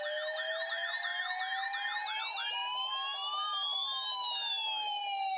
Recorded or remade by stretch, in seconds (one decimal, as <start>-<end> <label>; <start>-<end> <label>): 0.0-5.4 recorded